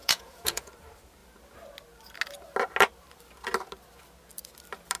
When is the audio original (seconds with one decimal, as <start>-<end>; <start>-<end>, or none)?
0.7-5.0